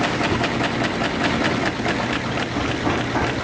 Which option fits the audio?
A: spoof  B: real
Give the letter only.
B